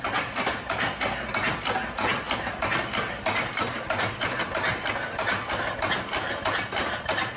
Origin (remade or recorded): recorded